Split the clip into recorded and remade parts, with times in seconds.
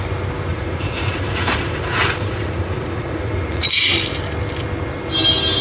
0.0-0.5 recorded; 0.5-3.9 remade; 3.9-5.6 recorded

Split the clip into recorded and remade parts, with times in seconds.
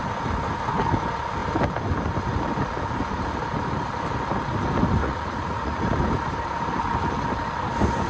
0.0-5.0 recorded; 5.0-5.8 remade; 5.8-8.1 recorded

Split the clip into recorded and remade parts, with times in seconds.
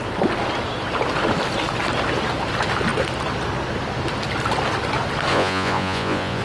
0.0-5.3 recorded; 5.3-6.4 remade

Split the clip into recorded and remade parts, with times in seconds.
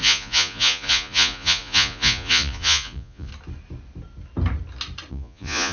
0.0-3.3 remade; 3.3-5.1 recorded; 5.1-5.7 remade